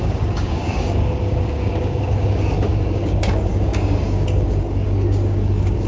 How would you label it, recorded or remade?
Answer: remade